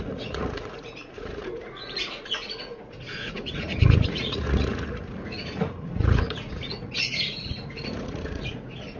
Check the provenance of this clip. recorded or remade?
remade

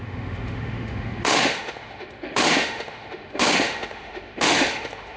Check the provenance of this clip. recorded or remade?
remade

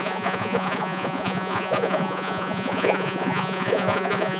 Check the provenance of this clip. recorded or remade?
remade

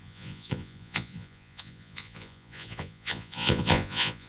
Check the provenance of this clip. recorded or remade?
remade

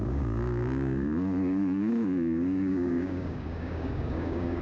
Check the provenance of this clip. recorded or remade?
remade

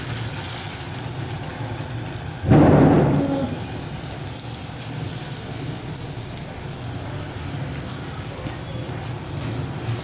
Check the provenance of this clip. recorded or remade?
recorded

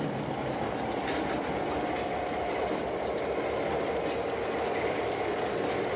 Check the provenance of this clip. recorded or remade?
recorded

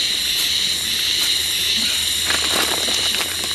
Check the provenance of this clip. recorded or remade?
remade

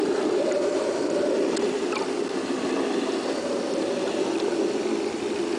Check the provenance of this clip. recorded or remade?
recorded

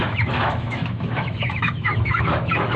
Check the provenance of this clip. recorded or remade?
remade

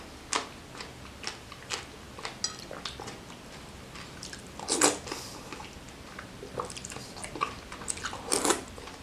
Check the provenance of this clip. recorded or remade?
recorded